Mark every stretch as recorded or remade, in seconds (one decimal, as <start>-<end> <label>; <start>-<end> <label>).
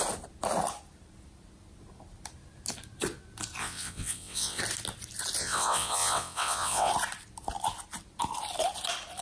0.0-3.6 recorded; 3.6-4.6 remade; 4.6-5.4 recorded; 5.4-6.9 remade; 6.9-9.2 recorded